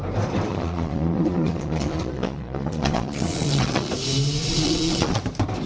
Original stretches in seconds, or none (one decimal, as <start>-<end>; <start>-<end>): 0.0-0.5; 3.9-4.4; 5.2-5.7